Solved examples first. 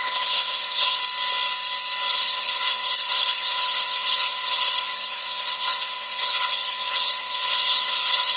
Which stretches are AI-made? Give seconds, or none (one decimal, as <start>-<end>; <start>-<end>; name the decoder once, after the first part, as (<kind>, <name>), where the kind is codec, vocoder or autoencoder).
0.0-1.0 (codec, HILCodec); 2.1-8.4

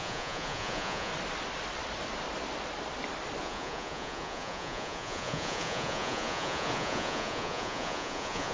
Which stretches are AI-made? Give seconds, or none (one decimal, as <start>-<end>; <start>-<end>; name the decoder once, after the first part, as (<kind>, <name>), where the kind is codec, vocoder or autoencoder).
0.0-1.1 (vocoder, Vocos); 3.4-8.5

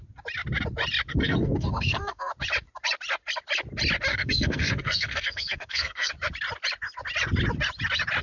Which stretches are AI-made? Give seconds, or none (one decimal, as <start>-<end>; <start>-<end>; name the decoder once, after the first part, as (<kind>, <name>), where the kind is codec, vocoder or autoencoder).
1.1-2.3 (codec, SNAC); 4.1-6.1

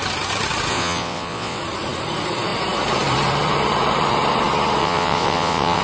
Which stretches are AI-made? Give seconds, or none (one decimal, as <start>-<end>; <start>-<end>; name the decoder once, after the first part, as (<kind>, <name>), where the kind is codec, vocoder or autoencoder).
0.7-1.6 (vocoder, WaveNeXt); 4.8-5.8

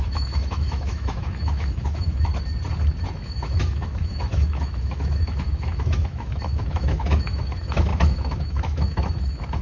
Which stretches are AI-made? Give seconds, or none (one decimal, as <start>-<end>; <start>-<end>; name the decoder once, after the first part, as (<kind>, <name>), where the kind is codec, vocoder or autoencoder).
0.0-2.3 (autoencoder, DAC-VAE); 3.0-9.6

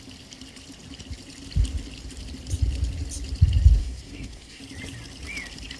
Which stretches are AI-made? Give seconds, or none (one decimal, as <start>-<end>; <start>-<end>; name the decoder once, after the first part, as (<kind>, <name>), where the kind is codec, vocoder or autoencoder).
3.8-4.6 (codec, SNAC)